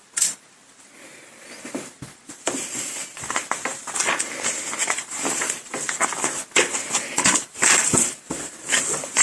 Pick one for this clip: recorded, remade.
recorded